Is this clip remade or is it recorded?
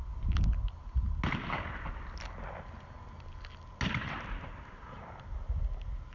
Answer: recorded